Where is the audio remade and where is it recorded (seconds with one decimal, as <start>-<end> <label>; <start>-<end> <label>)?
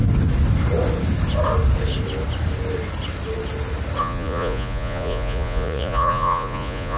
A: 0.0-4.0 recorded; 4.0-7.0 remade